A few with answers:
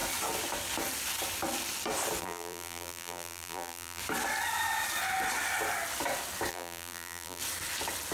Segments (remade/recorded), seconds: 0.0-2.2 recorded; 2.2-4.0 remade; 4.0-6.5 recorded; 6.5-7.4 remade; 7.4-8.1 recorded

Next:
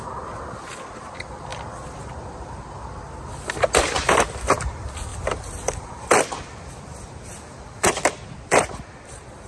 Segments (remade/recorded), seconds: 0.0-1.5 recorded; 1.5-4.6 remade; 4.6-5.1 recorded; 5.1-9.5 remade

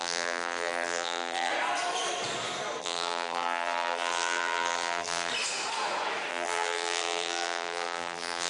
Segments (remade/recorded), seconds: 0.0-1.5 remade; 1.5-2.8 recorded; 2.8-5.3 remade; 5.3-6.3 recorded; 6.3-8.5 remade

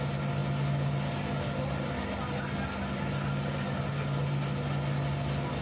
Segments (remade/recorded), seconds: 0.0-5.6 recorded

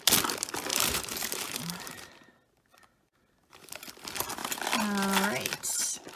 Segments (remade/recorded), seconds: 0.0-0.7 recorded; 0.7-2.1 remade; 2.1-6.2 recorded

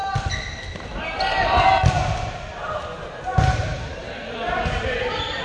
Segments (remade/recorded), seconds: 0.0-3.7 recorded; 3.7-5.0 remade; 5.0-5.4 recorded